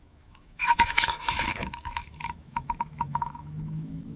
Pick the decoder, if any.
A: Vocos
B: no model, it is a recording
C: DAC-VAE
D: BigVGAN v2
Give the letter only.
C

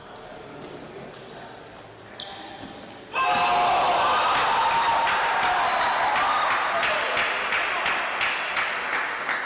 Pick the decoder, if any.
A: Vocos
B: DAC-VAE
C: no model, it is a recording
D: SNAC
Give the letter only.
C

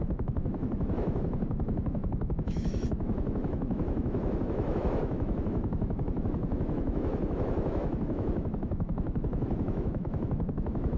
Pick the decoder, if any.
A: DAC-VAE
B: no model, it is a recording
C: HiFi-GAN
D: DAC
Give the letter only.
A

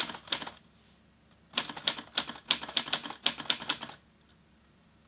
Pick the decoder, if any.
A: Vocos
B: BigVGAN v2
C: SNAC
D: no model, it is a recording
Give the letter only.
D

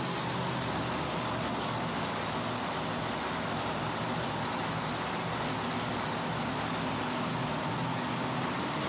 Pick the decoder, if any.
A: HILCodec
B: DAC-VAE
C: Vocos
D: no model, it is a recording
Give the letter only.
D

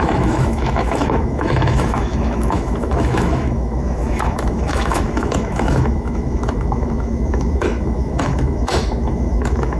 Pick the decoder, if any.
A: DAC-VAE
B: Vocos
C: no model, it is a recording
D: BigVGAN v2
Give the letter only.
A